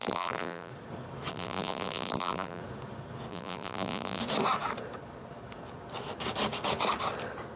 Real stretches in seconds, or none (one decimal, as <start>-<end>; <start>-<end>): 0.7-1.3; 2.6-3.3; 4.2-7.6